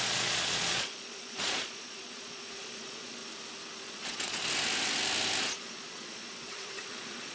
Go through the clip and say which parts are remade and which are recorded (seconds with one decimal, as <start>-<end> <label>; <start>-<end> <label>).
0.0-3.2 remade; 3.2-3.8 recorded; 3.8-4.4 remade; 4.4-5.4 recorded; 5.4-7.3 remade